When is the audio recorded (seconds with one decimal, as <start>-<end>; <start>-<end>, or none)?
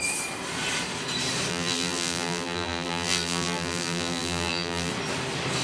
0.0-1.5; 4.9-5.6